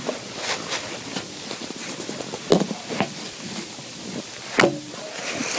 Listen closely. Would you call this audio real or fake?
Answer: real